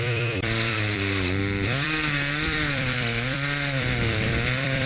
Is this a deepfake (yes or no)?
yes